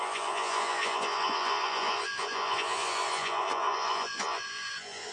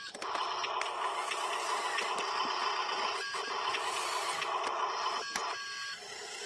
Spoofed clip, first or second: first